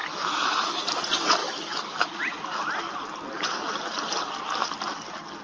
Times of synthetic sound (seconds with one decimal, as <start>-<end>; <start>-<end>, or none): 0.0-0.8; 1.4-2.2

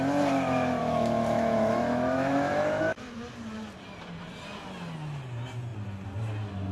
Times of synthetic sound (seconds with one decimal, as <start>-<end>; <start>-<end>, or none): 0.8-2.8

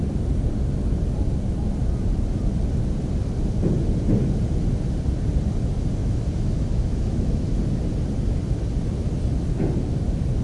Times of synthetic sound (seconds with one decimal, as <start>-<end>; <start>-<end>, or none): 6.0-7.6

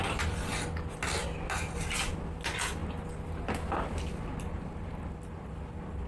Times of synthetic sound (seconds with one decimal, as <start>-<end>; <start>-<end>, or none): none

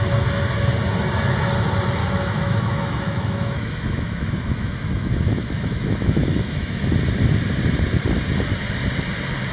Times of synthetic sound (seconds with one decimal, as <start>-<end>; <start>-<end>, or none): 2.0-6.9

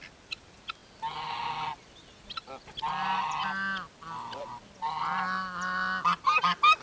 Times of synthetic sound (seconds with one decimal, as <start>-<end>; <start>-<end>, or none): none